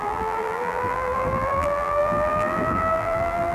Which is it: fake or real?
fake